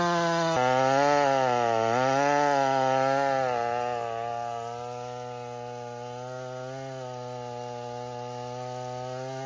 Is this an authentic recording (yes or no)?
yes